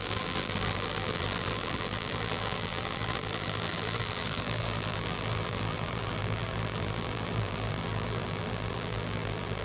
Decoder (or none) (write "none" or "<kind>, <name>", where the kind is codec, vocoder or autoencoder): vocoder, BigVGAN v2